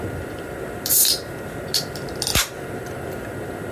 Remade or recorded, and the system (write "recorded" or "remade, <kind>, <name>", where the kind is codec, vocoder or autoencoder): recorded